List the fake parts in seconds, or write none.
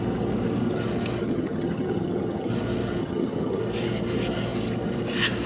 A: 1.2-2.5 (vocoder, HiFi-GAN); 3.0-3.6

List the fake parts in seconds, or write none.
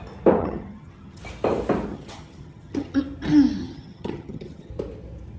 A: 0.4-1.2 (vocoder, HiFi-GAN); 1.9-3.0; 3.6-4.7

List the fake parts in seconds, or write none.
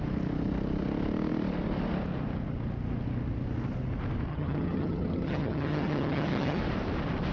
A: 4.3-6.6 (vocoder, HiFi-GAN)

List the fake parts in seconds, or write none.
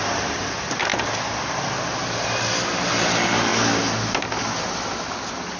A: none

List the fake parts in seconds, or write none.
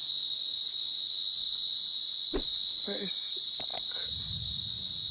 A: none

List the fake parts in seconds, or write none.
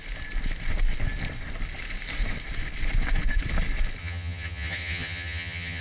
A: 4.0-5.8 (vocoder, HiFi-GAN)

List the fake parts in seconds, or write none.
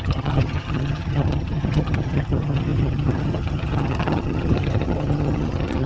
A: 0.0-5.9 (vocoder, HiFi-GAN)